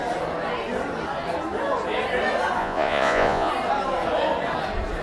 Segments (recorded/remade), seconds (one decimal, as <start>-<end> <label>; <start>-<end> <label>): 0.0-2.6 recorded; 2.6-3.5 remade; 3.5-5.0 recorded

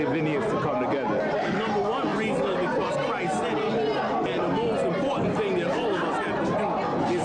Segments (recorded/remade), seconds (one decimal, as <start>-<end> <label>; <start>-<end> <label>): 0.0-7.2 recorded

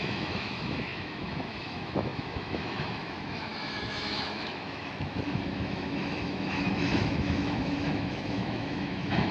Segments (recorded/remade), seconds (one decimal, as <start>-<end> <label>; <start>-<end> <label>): 0.0-9.3 remade